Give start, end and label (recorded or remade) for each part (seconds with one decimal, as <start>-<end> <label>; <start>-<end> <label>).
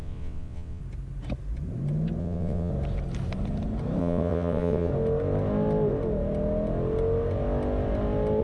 0.0-0.8 remade; 0.8-2.2 recorded; 2.2-2.7 remade; 2.7-4.0 recorded; 4.0-4.9 remade; 4.9-8.4 recorded